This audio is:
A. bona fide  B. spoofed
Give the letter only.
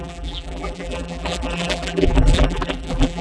B